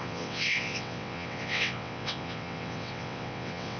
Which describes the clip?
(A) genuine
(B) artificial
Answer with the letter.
B